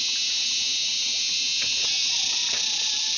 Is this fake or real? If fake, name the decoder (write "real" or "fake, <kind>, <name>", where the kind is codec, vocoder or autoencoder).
real